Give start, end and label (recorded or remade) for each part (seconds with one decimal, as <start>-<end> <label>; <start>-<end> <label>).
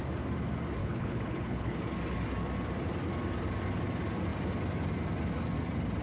0.0-0.8 recorded; 0.8-1.8 remade; 1.8-6.0 recorded